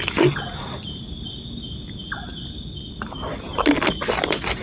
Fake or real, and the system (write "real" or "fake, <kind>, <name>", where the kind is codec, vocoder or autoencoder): real